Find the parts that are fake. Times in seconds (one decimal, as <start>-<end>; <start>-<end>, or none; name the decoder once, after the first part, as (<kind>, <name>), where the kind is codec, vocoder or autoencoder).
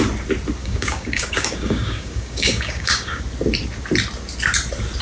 0.6-3.2 (codec, DAC)